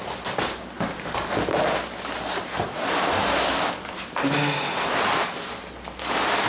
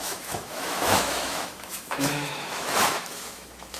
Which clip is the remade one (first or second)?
second